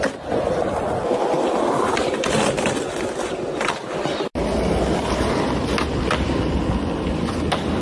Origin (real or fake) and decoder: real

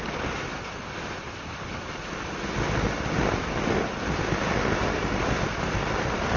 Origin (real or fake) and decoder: real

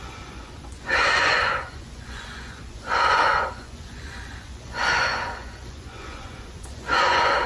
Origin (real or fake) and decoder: fake, vocoder, Vocos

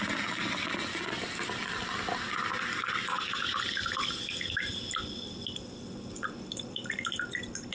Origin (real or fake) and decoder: real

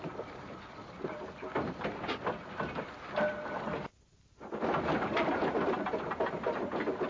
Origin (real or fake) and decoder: real